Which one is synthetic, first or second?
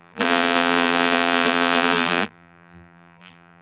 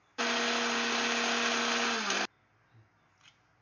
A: first